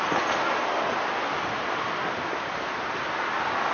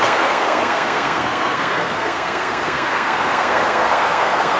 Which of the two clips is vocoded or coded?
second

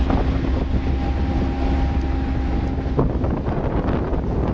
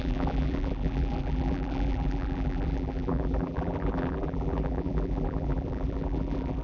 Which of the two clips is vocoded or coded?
second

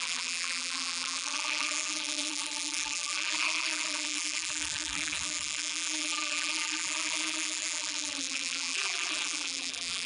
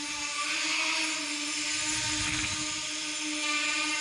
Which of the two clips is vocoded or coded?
first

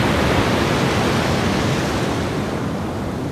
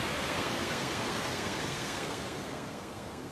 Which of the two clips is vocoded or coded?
second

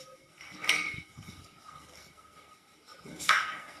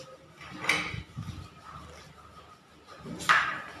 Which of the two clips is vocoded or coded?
first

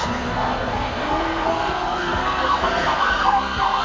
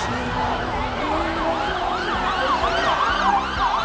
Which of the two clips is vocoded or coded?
first